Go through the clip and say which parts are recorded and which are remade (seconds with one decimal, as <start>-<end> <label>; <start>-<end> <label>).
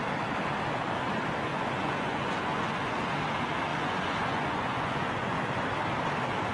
0.0-1.5 recorded; 1.5-3.1 remade; 3.1-3.7 recorded; 3.7-5.5 remade; 5.5-6.5 recorded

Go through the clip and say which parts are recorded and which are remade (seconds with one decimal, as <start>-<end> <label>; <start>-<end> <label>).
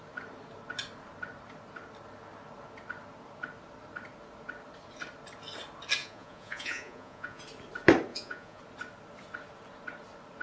0.0-6.0 recorded; 6.0-7.4 remade; 7.4-8.1 recorded; 8.1-8.6 remade; 8.6-10.4 recorded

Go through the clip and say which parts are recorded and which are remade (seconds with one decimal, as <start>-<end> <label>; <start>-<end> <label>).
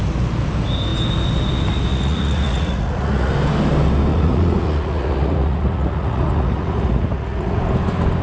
0.0-1.9 recorded; 1.9-3.3 remade; 3.3-4.1 recorded; 4.1-7.6 remade; 7.6-8.2 recorded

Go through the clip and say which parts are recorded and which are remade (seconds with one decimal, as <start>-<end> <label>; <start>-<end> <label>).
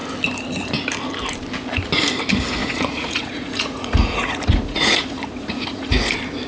0.0-2.6 recorded; 2.6-6.1 remade; 6.1-6.5 recorded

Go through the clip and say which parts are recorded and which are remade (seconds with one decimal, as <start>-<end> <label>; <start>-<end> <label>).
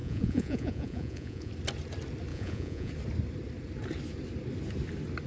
0.0-1.5 remade; 1.5-2.3 recorded; 2.3-2.9 remade; 2.9-5.3 recorded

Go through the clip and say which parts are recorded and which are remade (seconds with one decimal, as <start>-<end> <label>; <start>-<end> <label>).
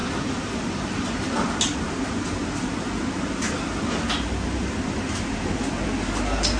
0.0-6.6 recorded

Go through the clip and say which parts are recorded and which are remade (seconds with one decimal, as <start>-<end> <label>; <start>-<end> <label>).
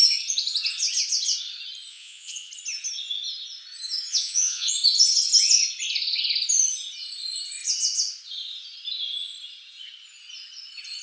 0.0-1.9 recorded; 1.9-2.5 remade; 2.5-4.1 recorded; 4.1-4.7 remade; 4.7-11.0 recorded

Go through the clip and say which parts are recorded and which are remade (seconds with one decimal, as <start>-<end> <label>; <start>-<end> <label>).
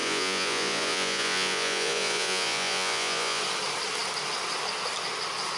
0.0-3.4 remade; 3.4-5.6 recorded